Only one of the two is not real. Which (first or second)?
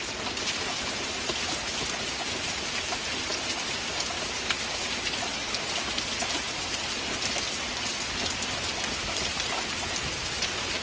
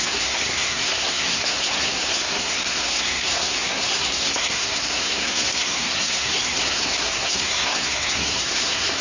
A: second